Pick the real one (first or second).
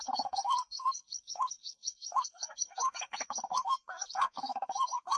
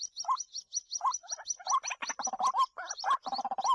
second